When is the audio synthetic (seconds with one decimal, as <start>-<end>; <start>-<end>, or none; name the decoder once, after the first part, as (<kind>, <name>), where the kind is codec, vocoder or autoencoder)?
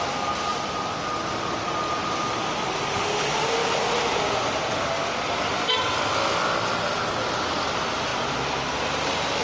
0.5-2.3 (vocoder, BigVGAN v2); 3.6-6.4; 8.1-8.7